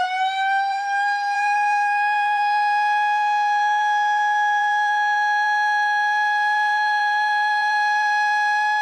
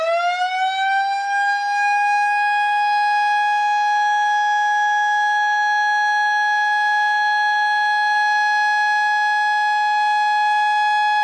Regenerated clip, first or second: first